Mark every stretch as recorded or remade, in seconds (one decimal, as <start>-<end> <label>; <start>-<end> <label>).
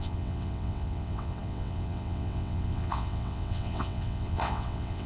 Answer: 0.0-5.1 remade